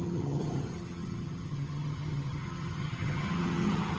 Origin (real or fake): fake